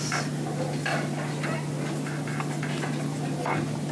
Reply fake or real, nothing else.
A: real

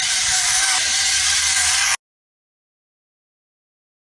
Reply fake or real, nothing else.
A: real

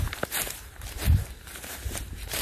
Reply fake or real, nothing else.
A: fake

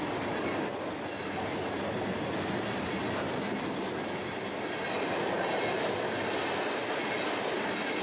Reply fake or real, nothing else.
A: real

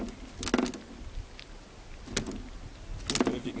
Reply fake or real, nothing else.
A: real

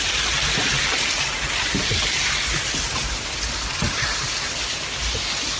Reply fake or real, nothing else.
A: real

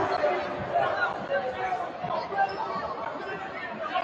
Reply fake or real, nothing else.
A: real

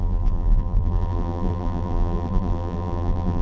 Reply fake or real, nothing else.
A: fake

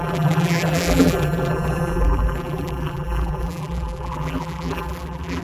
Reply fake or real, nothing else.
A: fake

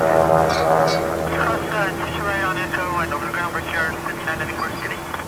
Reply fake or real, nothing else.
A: real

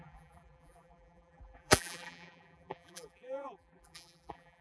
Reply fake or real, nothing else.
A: fake